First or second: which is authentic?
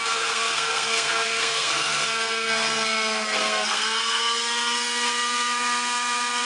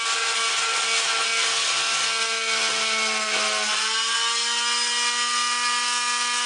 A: second